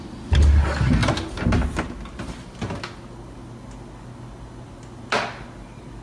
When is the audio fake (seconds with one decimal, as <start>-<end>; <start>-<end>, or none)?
none